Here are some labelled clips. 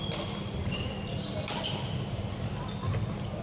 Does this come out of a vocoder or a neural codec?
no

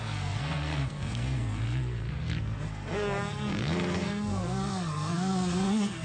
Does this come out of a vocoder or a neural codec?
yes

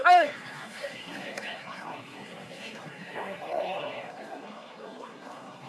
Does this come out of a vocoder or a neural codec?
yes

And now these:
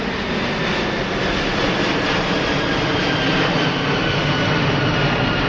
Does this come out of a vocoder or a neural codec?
no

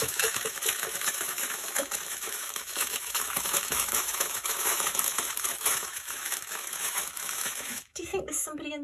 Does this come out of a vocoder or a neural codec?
yes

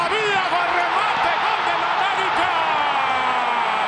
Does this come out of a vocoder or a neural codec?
no